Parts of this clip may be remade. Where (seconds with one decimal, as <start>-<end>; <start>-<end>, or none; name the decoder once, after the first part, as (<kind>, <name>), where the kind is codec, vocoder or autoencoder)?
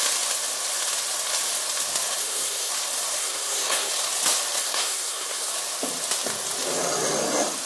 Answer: 2.2-2.7 (codec, SNAC); 3.2-3.9; 4.6-5.5